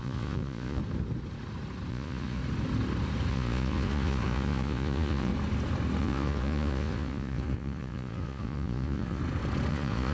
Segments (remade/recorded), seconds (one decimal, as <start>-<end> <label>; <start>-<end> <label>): 0.0-0.8 remade; 0.8-1.9 recorded; 1.9-2.4 remade; 2.4-3.3 recorded; 3.3-5.3 remade; 5.3-6.0 recorded; 6.0-9.2 remade; 9.2-9.7 recorded; 9.7-10.1 remade

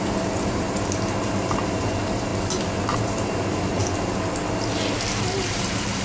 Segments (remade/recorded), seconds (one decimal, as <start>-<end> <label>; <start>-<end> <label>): 0.0-2.3 remade; 2.3-3.0 recorded; 3.0-3.8 remade; 3.8-5.2 recorded; 5.2-6.0 remade

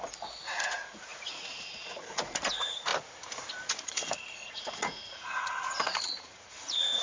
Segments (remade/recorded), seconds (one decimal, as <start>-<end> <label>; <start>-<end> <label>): 0.0-2.9 remade; 2.9-3.7 recorded; 3.7-7.0 remade

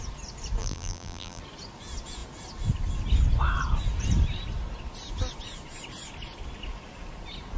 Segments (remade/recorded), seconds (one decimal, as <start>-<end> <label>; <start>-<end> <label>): 0.0-0.6 recorded; 0.6-1.4 remade; 1.4-7.6 recorded

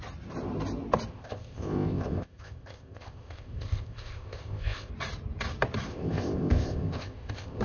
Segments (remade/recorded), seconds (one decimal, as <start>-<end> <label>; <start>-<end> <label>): 0.0-1.1 recorded; 1.1-4.9 remade; 4.9-5.9 recorded; 5.9-7.6 remade

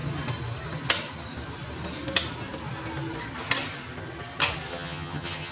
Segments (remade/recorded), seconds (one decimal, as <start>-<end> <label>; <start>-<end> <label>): 0.0-4.7 recorded; 4.7-5.5 remade

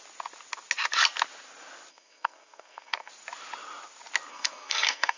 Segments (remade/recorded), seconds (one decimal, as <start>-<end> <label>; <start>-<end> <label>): 0.0-1.9 recorded; 1.9-3.1 remade; 3.1-4.3 recorded; 4.3-5.2 remade